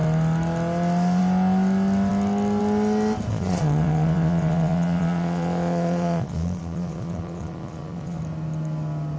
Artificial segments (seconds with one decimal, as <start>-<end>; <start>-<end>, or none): 3.3-8.2